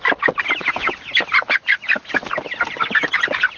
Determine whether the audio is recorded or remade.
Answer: recorded